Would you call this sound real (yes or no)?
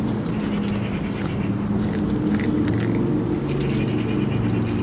yes